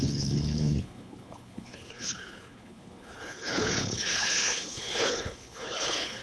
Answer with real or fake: fake